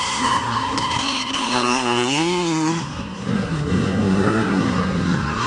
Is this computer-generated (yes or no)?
yes